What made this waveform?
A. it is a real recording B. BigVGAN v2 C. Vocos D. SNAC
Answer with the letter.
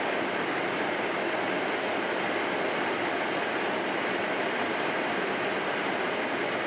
A